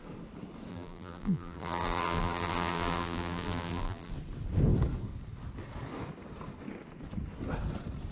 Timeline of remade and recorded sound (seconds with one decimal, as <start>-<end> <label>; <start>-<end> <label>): 0.0-0.7 recorded; 0.7-4.1 remade; 4.1-8.1 recorded